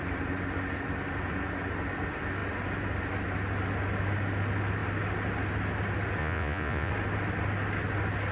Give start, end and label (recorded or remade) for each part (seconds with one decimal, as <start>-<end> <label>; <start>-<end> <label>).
0.0-6.2 recorded; 6.2-6.9 remade; 6.9-8.3 recorded